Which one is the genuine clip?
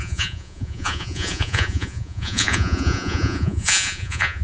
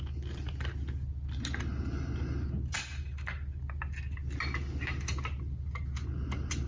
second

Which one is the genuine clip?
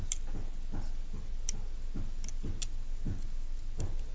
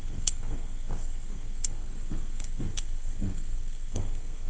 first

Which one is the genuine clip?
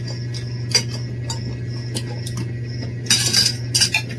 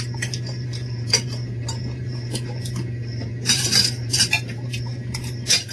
first